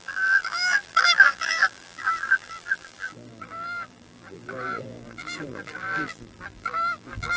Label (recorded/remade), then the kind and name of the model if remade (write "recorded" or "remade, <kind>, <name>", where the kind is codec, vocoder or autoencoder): remade, vocoder, BigVGAN v2